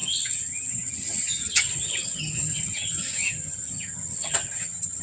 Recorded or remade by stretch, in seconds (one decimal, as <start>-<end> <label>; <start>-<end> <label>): 0.0-5.0 remade